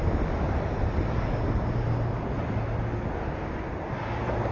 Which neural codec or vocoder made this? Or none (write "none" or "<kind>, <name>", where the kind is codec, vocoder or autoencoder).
none